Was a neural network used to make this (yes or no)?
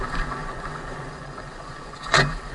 yes